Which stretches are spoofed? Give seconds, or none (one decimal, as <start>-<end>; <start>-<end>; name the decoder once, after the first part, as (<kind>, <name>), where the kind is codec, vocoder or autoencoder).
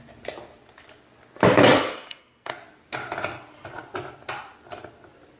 1.9-2.5 (codec, SNAC)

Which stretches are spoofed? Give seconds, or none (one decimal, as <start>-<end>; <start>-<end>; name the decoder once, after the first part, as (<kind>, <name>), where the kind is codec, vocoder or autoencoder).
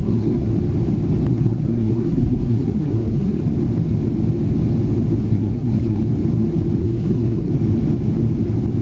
0.0-0.5 (codec, SNAC); 1.3-3.4; 5.2-6.0; 6.8-7.5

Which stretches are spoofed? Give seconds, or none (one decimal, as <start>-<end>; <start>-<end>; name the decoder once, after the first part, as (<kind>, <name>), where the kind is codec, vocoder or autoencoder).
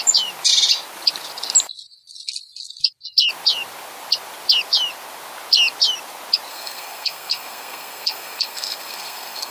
6.5-9.5 (codec, SNAC)